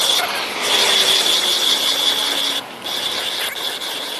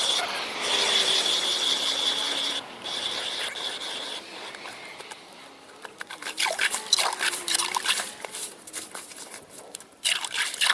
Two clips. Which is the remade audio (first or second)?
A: second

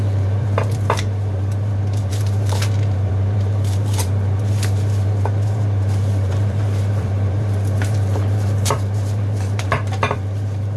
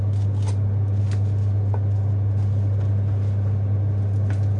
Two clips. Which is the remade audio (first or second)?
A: first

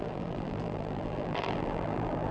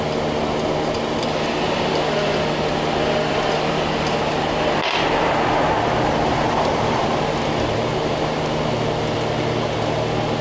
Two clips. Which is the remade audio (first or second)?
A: first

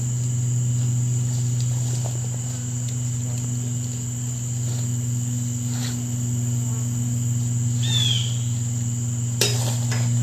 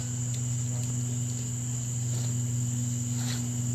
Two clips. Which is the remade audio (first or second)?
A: first